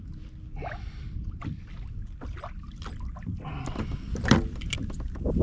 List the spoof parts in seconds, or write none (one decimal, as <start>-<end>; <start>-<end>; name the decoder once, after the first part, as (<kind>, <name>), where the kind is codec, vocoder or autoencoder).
none